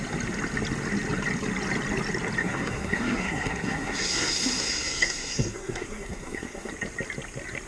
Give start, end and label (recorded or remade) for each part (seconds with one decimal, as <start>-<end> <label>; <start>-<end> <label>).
0.0-2.4 recorded; 2.4-6.7 remade; 6.7-7.7 recorded